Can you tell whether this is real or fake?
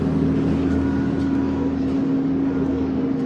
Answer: fake